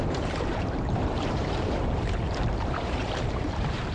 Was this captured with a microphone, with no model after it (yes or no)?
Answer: no